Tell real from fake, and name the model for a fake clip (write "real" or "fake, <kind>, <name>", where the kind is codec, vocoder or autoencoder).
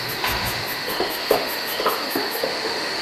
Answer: fake, autoencoder, DAC-VAE